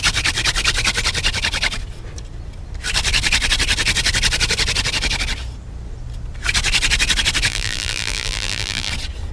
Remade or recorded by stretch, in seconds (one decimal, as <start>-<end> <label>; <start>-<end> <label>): 0.0-7.5 recorded; 7.5-8.9 remade; 8.9-9.3 recorded